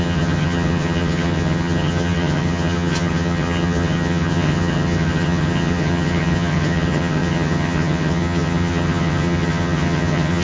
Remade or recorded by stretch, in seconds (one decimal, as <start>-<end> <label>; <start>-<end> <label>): 0.0-10.4 remade